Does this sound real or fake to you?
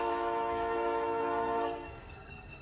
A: fake